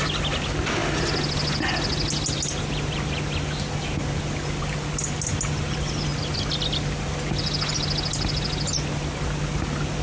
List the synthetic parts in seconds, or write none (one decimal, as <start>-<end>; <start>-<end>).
none